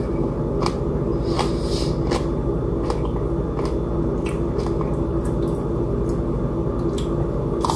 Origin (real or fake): real